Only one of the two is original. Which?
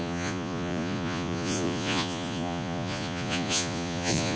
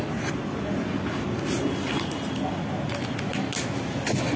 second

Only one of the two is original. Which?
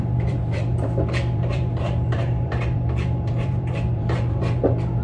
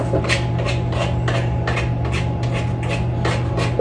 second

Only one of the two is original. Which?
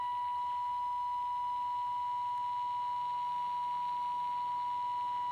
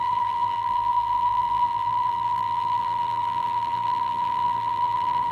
first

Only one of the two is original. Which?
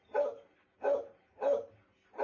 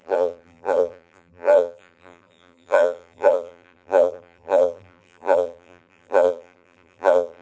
first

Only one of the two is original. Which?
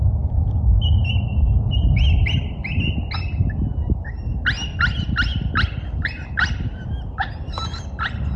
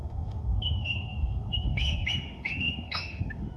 first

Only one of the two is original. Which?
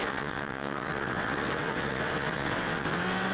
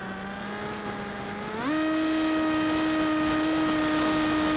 second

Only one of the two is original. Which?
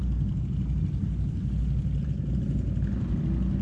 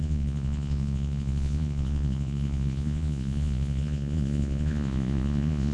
first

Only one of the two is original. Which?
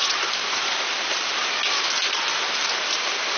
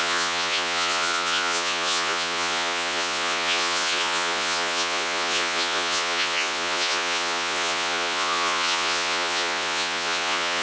first